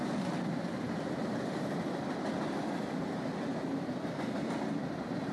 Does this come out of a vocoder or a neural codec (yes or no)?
no